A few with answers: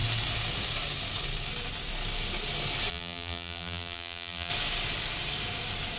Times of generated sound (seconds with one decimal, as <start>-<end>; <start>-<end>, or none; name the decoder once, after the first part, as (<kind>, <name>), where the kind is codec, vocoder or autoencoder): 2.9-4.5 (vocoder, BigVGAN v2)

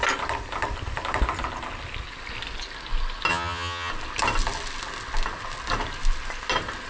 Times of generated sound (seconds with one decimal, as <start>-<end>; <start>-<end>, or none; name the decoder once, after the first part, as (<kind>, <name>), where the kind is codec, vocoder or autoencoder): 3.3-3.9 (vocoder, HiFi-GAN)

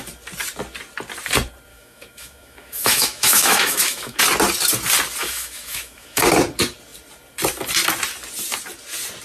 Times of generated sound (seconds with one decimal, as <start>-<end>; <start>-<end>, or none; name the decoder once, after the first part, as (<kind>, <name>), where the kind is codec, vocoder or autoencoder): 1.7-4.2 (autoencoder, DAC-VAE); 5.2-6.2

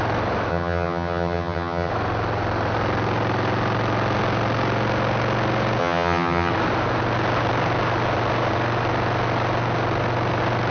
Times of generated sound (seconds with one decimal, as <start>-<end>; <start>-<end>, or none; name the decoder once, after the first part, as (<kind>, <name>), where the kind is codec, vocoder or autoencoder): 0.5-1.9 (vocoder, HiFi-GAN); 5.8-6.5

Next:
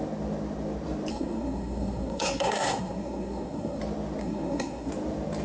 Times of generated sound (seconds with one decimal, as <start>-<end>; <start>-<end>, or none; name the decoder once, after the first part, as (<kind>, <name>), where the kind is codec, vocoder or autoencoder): 1.1-3.8 (codec, SNAC); 4.2-4.9

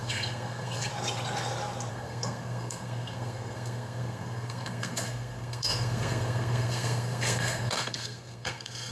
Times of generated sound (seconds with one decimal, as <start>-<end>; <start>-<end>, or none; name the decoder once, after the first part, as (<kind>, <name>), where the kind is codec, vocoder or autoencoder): 0.0-0.9 (codec, SNAC); 1.9-8.9